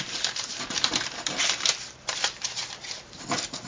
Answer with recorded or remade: remade